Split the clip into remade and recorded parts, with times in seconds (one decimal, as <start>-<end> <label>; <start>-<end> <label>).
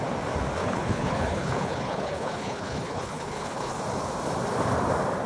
0.0-0.6 recorded; 0.6-3.8 remade; 3.8-5.3 recorded